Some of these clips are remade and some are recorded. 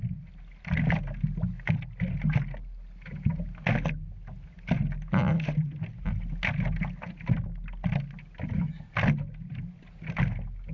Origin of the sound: recorded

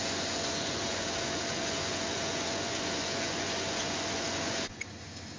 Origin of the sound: remade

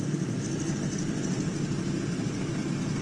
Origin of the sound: recorded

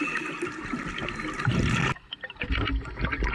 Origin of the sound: recorded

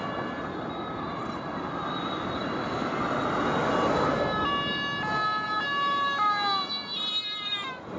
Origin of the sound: recorded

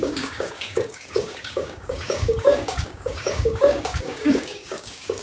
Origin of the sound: remade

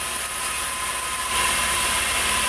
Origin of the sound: recorded